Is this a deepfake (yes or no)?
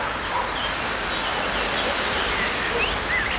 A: no